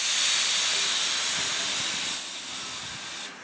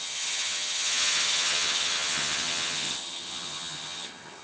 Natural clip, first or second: first